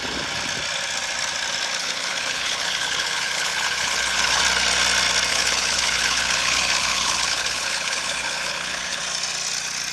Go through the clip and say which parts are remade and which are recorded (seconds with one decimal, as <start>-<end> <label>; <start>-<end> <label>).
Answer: 0.0-1.8 recorded; 1.8-4.4 remade; 4.4-5.3 recorded; 5.3-9.0 remade; 9.0-9.9 recorded